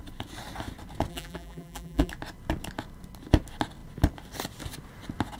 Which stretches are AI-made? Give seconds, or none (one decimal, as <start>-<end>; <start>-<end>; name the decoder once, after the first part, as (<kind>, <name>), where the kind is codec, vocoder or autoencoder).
1.1-2.1 (vocoder, BigVGAN v2)